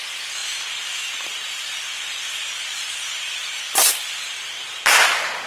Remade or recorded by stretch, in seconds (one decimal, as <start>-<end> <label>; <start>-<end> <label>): 0.0-4.8 remade; 4.8-5.5 recorded